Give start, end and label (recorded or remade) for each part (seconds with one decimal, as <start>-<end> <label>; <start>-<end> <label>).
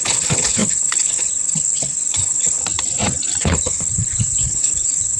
0.0-2.6 remade; 2.6-3.4 recorded; 3.4-5.2 remade